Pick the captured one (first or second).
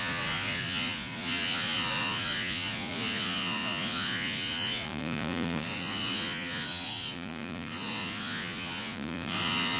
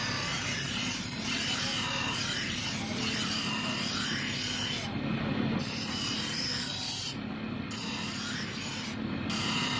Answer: second